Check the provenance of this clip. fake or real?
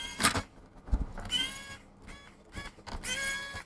real